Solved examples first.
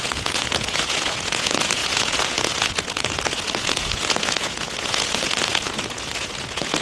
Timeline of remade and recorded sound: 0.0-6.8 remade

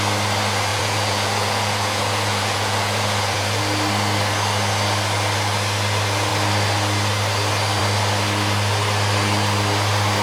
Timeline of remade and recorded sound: 0.0-0.7 recorded; 0.7-3.6 remade; 3.6-10.2 recorded